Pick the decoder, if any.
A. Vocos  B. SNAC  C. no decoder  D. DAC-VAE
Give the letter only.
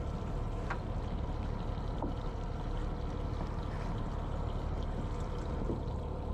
C